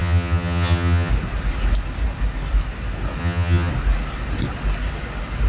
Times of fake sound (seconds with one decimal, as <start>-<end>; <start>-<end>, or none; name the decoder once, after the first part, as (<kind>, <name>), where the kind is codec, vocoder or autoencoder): 0.0-1.1 (vocoder, HiFi-GAN); 3.2-3.7

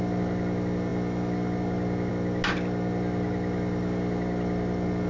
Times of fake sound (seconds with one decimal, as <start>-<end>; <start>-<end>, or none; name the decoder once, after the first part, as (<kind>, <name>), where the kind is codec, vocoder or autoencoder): none

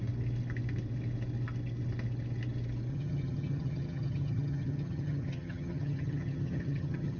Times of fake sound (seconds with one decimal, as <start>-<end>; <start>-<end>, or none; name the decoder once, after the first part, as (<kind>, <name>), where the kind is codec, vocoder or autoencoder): 2.9-7.2 (vocoder, HiFi-GAN)

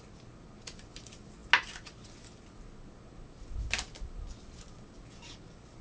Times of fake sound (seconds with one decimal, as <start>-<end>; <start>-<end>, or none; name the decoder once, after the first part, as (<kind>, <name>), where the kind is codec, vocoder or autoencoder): none

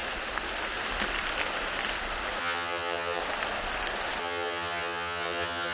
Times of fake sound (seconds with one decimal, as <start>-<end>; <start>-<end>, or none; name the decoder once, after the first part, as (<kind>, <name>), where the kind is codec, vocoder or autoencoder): 2.4-3.2 (vocoder, HiFi-GAN); 4.2-5.7